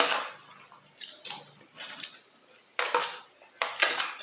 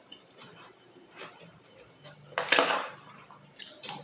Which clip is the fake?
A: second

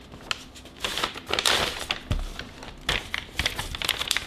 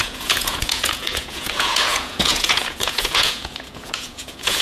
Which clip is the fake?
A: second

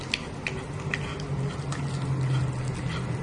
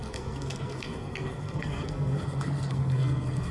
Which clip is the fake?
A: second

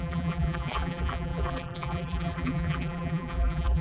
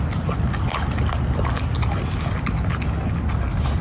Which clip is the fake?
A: first